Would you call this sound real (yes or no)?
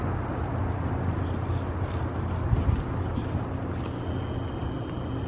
yes